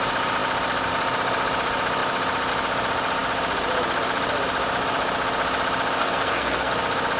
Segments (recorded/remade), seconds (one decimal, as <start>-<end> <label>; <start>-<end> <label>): 0.0-6.0 recorded; 6.0-6.7 remade; 6.7-7.2 recorded